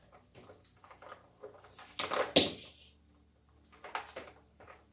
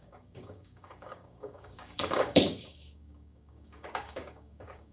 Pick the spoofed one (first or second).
second